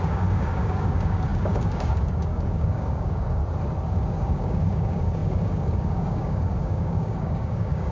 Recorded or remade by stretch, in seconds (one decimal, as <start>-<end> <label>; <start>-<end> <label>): 0.0-3.4 remade; 3.4-3.9 recorded; 3.9-7.9 remade